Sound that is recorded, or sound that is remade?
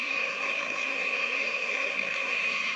remade